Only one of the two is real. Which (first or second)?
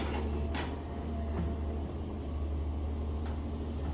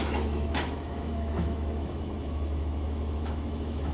first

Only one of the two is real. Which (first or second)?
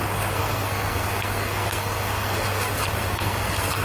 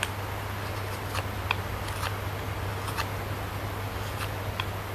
second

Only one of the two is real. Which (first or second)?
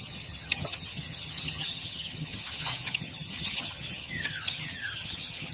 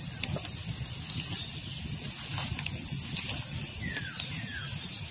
second